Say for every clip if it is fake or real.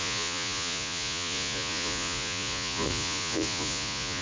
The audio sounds fake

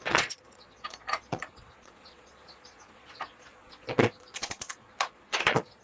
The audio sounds fake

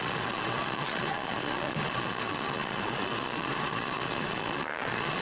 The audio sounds fake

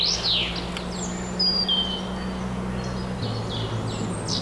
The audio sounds real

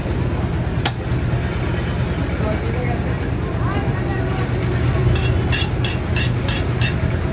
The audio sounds real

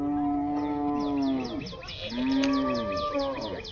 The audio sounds real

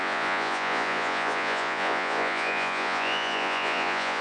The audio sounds fake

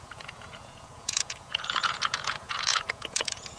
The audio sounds fake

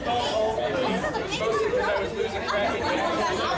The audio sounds real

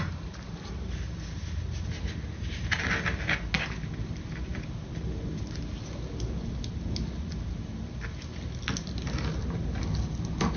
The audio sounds real